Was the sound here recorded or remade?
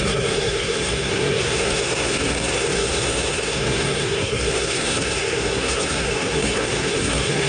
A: remade